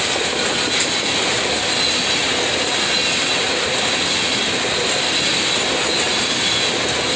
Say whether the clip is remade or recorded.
recorded